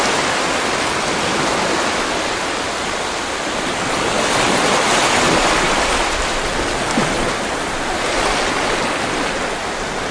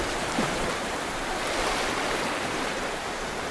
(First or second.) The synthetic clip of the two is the second